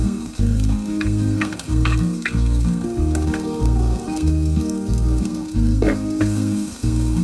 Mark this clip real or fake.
fake